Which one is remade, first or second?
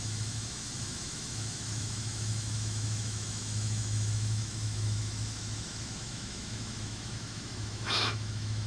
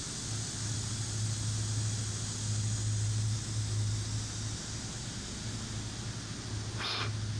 first